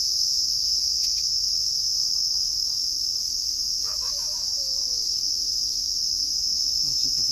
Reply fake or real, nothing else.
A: fake